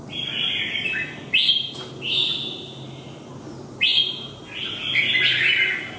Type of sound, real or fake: real